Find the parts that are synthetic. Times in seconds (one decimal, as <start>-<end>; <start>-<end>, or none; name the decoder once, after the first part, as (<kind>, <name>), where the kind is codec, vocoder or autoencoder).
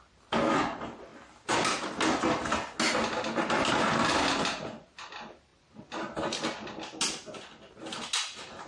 none